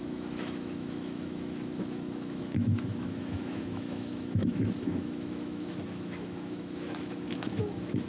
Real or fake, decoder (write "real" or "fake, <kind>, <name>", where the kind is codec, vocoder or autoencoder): fake, autoencoder, DAC-VAE